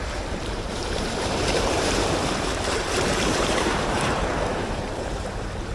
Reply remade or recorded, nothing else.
remade